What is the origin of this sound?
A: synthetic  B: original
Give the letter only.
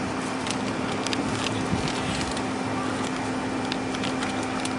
B